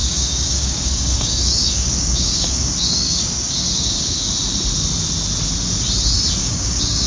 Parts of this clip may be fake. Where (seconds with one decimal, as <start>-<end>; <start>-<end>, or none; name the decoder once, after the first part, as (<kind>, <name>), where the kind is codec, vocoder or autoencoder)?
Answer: 0.0-4.3 (codec, DAC); 6.4-7.1